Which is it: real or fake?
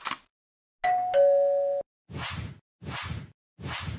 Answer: real